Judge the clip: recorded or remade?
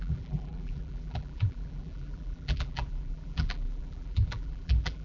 remade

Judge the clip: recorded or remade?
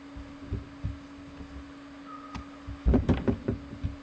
recorded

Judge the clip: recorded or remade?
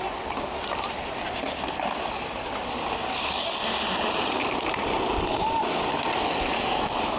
recorded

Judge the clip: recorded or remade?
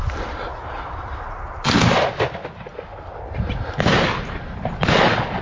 recorded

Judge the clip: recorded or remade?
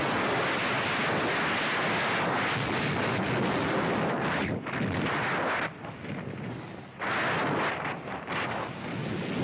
recorded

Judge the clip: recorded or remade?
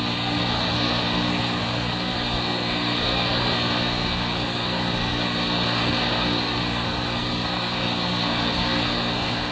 remade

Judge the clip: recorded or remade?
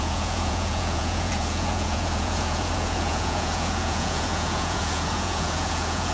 remade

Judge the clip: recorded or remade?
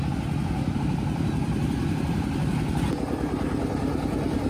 recorded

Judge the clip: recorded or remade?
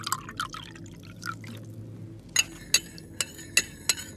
recorded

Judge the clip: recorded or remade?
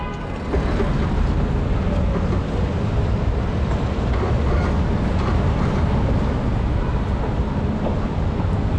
recorded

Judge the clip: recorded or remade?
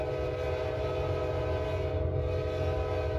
recorded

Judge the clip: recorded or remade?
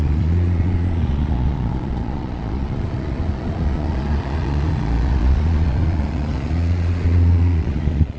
remade